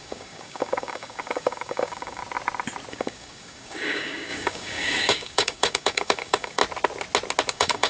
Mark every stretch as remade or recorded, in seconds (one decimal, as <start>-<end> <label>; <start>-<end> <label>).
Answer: 0.0-2.2 remade; 2.2-2.9 recorded; 2.9-6.6 remade; 6.6-7.5 recorded; 7.5-7.9 remade